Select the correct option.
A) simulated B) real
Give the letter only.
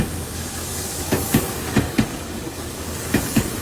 A